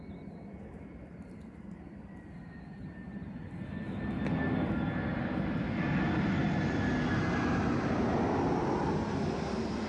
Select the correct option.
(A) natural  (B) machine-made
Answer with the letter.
A